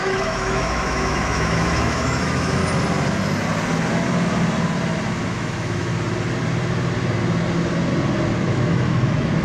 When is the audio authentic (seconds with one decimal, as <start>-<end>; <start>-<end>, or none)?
2.6-5.3; 5.9-8.5